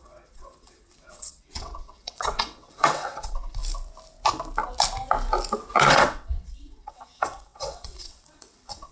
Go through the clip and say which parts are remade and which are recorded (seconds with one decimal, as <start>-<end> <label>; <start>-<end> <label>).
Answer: 0.0-3.6 remade; 3.6-5.9 recorded; 5.9-8.9 remade